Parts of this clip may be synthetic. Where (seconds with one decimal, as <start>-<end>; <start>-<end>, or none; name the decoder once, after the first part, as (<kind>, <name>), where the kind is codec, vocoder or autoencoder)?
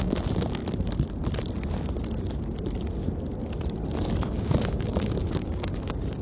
0.0-0.6 (codec, DAC); 4.3-6.2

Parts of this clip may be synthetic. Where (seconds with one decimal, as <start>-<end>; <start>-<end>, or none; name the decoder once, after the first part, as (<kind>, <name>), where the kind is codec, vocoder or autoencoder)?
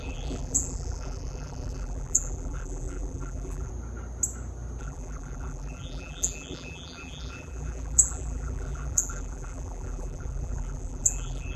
0.0-3.7 (vocoder, BigVGAN v2); 4.8-11.6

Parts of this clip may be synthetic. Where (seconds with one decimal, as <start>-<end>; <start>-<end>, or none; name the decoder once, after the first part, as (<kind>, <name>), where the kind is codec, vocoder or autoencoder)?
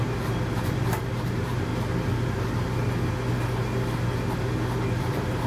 0.0-1.7 (vocoder, BigVGAN v2); 5.0-5.5